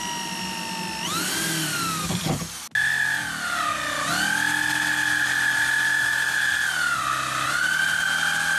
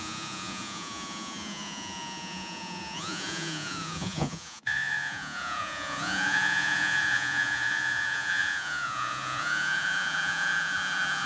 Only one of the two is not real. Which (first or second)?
second